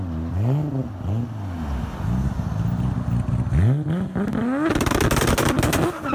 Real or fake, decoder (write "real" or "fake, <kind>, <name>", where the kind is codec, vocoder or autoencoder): real